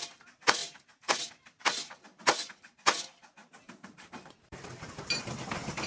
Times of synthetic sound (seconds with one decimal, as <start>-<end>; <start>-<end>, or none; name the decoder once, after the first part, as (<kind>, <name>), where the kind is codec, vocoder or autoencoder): 0.6-1.3 (vocoder, BigVGAN v2); 3.4-5.3

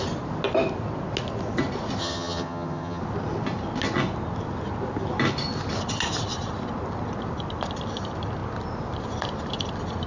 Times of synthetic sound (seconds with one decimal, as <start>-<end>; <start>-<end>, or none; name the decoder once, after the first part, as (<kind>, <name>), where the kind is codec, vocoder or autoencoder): 2.0-3.0 (vocoder, HiFi-GAN)

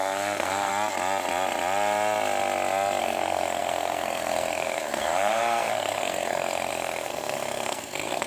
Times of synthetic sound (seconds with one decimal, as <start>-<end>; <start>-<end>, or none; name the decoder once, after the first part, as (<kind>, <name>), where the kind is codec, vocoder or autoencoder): 0.0-0.7 (codec, SNAC); 3.0-8.3

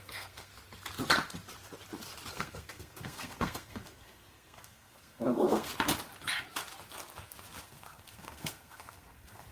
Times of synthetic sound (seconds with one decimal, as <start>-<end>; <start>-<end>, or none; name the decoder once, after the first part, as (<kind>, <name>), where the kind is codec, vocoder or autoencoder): 0.0-0.5 (codec, SNAC); 2.3-5.7; 7.6-9.5

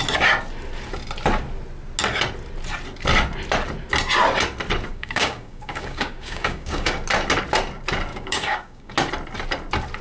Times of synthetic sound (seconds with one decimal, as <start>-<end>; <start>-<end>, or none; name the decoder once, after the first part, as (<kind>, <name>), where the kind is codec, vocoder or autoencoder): 4.9-6.9 (codec, DAC); 8.1-8.9

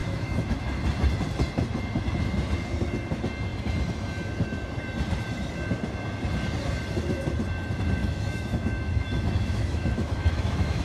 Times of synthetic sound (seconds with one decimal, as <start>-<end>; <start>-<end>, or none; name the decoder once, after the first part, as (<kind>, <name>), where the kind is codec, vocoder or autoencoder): 0.0-0.8 (autoencoder, DAC-VAE); 8.0-10.8

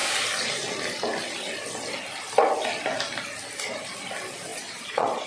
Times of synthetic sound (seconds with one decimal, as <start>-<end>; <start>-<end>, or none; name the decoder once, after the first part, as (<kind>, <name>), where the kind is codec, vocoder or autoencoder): 4.5-5.3 (vocoder, Vocos)

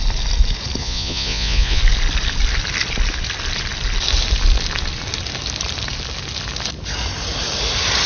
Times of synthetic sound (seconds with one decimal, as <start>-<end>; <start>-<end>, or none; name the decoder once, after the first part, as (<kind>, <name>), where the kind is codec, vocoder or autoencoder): 0.8-1.8 (vocoder, Vocos)